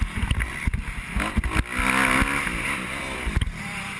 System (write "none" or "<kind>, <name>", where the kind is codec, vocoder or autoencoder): none